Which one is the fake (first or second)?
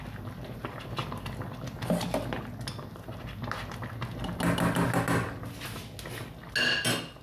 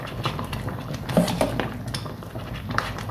second